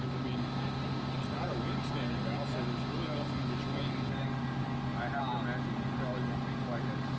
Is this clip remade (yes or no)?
no